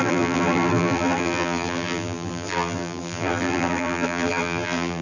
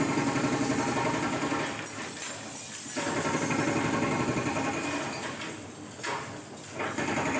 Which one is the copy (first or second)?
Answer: first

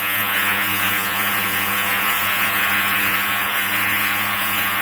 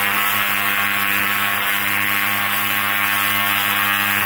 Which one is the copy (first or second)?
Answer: first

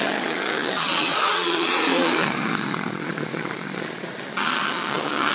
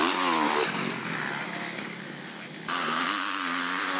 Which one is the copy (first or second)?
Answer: first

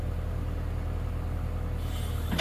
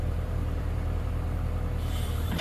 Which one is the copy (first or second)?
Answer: second